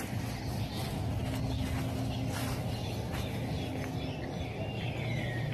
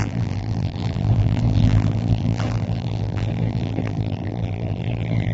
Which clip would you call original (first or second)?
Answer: first